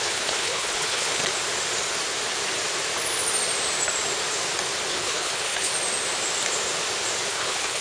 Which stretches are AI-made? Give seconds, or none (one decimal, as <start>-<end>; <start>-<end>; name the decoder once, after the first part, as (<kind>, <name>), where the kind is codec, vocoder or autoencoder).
0.0-1.2 (codec, HILCodec); 4.9-5.7; 7.3-7.8

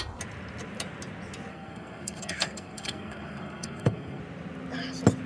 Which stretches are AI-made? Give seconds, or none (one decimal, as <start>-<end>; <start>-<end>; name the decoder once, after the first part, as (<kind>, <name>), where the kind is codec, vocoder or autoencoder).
1.5-4.2 (codec, SNAC)

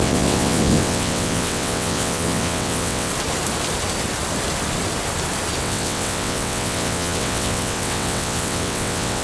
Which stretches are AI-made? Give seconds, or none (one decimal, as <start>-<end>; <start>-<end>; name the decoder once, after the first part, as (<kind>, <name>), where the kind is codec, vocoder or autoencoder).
0.0-3.1 (vocoder, WaveNeXt); 5.6-9.2

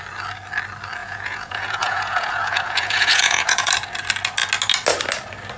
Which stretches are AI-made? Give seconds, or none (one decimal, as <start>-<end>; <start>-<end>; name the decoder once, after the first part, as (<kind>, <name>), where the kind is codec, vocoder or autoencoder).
1.0-3.7 (vocoder, Vocos)

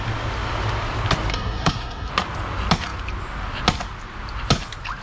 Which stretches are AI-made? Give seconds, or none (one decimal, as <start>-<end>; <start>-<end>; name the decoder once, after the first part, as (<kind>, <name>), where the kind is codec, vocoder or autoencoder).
1.3-2.1 (codec, SNAC)